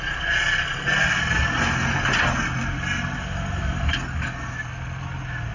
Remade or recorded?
recorded